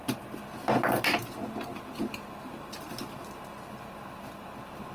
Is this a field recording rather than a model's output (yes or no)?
yes